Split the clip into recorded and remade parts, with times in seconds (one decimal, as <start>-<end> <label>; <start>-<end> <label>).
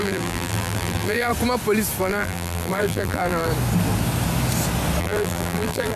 0.0-1.3 remade; 1.3-2.0 recorded; 2.0-3.5 remade; 3.5-5.0 recorded; 5.0-6.0 remade